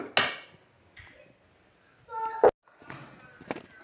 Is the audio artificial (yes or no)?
no